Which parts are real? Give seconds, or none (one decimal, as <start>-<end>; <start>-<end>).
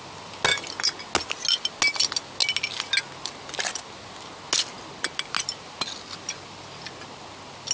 0.0-7.7